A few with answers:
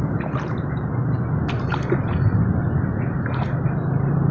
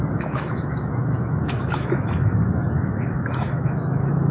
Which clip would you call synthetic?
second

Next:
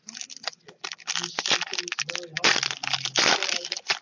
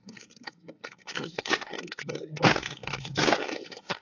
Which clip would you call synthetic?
second